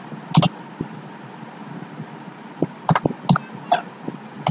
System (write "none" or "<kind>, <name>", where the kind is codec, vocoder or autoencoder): none